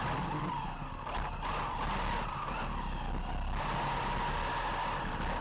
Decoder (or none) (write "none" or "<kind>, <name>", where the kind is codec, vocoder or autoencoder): none